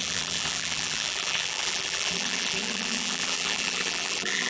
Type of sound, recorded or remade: remade